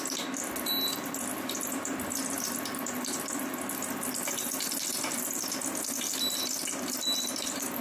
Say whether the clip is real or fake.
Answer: real